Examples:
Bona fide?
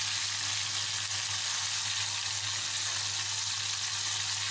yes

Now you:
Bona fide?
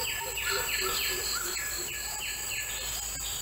yes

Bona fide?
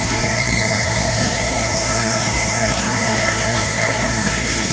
no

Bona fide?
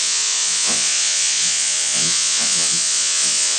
no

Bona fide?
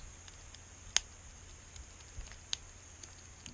yes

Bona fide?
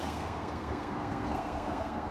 no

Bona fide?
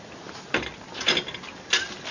yes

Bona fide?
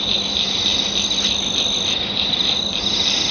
yes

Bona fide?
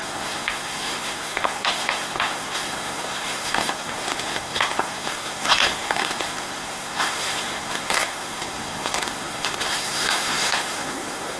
no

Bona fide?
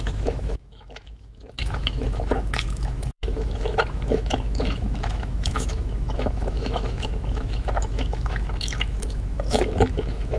no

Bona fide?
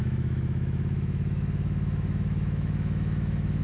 no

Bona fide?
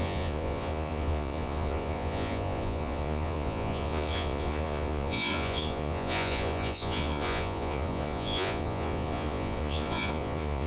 no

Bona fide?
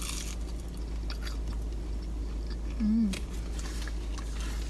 yes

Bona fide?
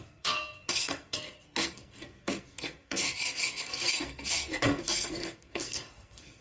no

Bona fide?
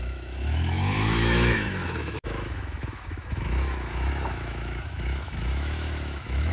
no